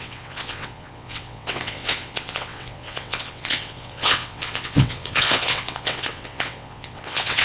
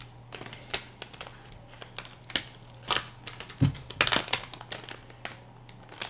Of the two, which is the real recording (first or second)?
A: second